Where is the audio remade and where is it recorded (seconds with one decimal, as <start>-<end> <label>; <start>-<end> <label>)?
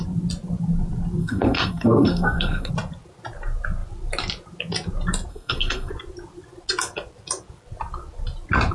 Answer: 0.0-1.2 recorded; 1.2-2.7 remade; 2.7-5.3 recorded; 5.3-5.9 remade; 5.9-8.7 recorded